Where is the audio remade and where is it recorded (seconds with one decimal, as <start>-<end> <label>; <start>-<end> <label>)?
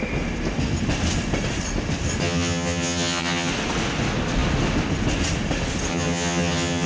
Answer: 0.0-2.2 recorded; 2.2-3.5 remade; 3.5-5.9 recorded; 5.9-6.9 remade